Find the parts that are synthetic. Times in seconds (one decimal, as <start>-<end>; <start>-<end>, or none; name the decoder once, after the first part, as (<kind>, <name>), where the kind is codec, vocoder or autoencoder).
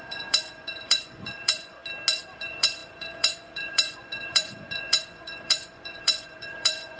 0.0-1.8 (vocoder, Vocos); 2.4-7.0